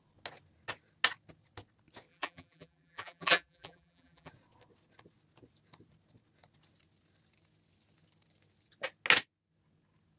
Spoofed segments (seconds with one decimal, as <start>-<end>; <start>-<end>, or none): 2.1-4.3